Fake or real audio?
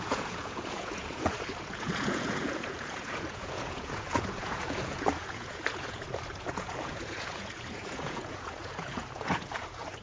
fake